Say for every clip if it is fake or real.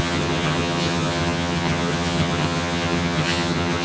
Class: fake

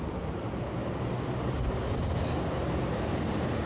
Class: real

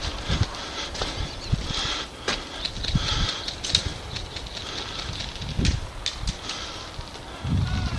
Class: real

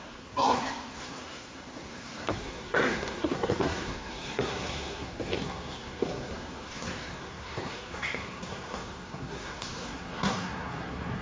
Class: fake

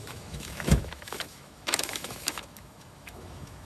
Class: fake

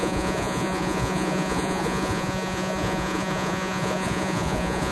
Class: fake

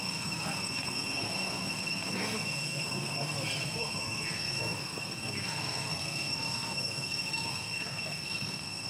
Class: fake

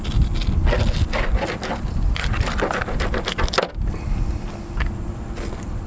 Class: real